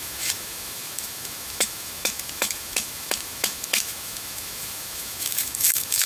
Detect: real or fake fake